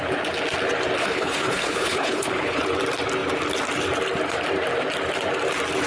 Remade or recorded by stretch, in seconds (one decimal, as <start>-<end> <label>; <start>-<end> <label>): 0.0-1.0 recorded; 1.0-2.6 remade; 2.6-5.9 recorded